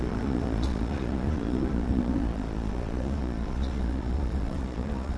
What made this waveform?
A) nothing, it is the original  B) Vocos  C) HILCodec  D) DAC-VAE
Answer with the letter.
B